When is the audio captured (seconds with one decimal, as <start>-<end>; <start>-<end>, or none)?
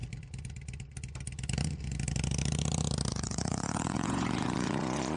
0.0-3.1